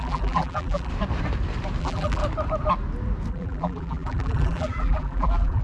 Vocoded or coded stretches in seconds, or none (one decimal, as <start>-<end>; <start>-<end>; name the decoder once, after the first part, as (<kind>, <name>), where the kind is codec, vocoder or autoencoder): 0.0-0.9 (vocoder, BigVGAN v2); 1.8-2.2; 3.3-5.6